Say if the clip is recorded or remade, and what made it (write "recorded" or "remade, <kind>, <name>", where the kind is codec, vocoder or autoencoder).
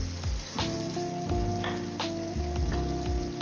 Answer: recorded